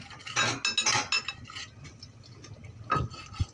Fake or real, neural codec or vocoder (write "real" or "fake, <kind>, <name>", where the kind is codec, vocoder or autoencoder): real